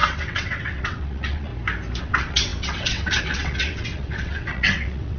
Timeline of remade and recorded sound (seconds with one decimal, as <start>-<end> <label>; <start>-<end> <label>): 0.0-1.5 remade; 1.5-2.0 recorded; 2.0-5.2 remade